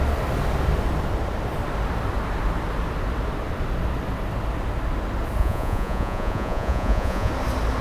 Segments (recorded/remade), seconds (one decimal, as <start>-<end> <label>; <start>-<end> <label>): 0.0-5.4 recorded; 5.4-7.3 remade; 7.3-7.8 recorded